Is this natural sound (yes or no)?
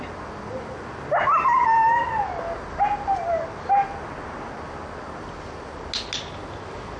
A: yes